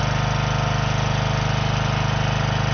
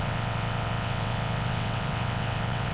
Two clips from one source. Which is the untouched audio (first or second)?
first